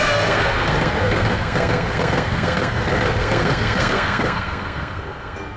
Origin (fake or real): fake